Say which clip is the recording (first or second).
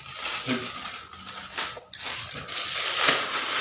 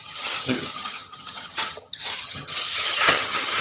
first